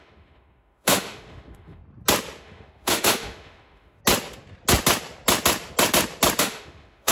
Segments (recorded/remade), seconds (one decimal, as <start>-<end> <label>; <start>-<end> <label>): 0.0-1.8 remade; 1.8-2.4 recorded; 2.4-4.0 remade; 4.0-6.4 recorded; 6.4-7.1 remade